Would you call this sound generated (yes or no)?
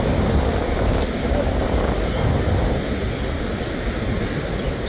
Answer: no